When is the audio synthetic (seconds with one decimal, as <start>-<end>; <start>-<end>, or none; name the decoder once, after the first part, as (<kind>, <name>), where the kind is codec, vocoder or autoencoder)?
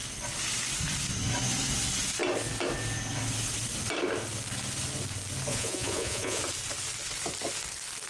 5.5-6.4 (vocoder, Vocos)